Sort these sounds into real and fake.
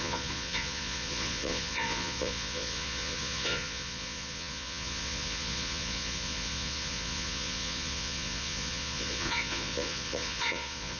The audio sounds fake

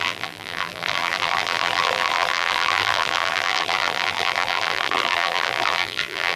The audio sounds fake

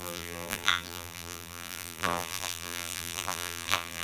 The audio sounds fake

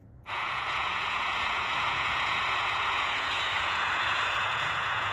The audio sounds fake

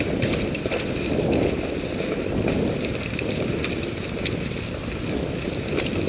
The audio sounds fake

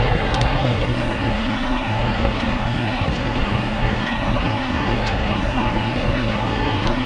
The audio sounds fake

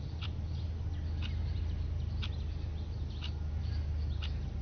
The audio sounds real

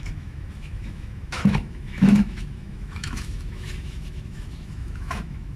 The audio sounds fake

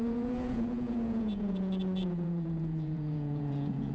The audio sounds fake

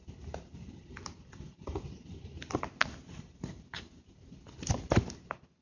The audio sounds real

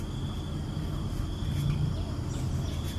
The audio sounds fake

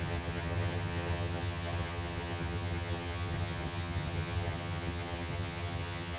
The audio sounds fake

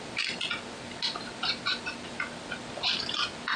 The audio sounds real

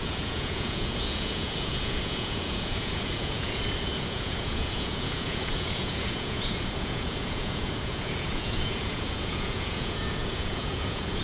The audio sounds fake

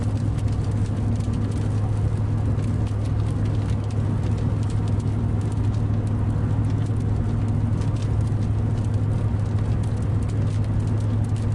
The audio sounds real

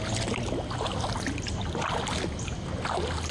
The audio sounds real